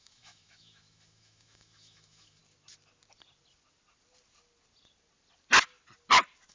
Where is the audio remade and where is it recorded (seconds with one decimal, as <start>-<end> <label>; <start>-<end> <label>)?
0.0-2.4 remade; 2.4-6.5 recorded